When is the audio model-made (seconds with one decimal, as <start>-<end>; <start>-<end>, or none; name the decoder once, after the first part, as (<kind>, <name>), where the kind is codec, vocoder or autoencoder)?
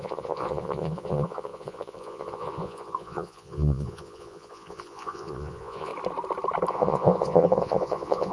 0.0-5.9 (vocoder, Vocos); 6.7-8.3